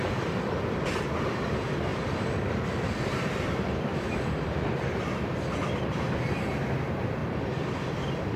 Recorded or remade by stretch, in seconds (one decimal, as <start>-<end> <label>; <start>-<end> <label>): 0.0-7.2 remade; 7.2-8.4 recorded